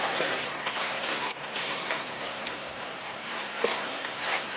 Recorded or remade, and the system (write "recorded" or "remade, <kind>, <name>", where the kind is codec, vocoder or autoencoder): remade, codec, SNAC